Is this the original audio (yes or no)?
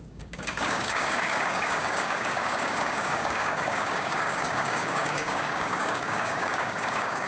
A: no